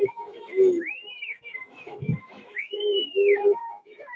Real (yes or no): no